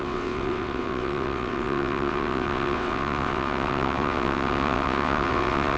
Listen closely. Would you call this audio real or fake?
fake